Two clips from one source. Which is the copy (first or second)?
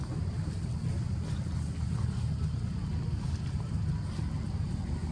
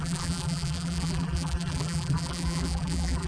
second